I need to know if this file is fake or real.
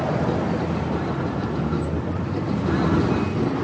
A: real